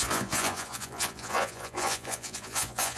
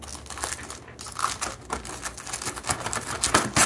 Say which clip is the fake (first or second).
first